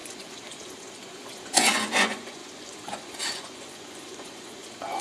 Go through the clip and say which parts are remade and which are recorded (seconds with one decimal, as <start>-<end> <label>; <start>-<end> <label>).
0.0-5.0 remade